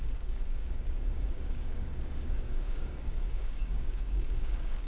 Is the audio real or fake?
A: fake